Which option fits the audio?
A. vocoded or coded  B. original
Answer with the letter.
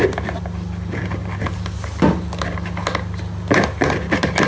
B